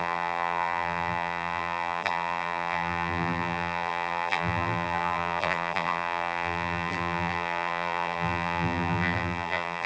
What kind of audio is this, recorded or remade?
remade